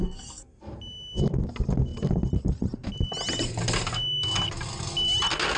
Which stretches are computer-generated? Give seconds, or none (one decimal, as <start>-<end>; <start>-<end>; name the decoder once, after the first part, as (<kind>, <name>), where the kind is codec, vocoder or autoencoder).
0.0-0.6 (codec, SNAC)